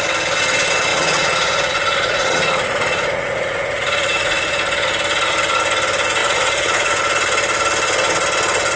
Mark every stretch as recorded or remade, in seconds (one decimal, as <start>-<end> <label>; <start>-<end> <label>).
0.0-0.9 recorded; 0.9-4.6 remade; 4.6-6.2 recorded; 6.2-7.0 remade; 7.0-8.8 recorded